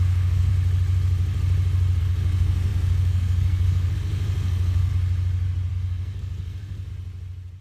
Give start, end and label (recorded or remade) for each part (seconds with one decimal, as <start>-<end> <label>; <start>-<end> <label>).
0.0-0.5 remade; 0.5-2.0 recorded; 2.0-4.9 remade; 4.9-5.7 recorded; 5.7-6.9 remade; 6.9-7.6 recorded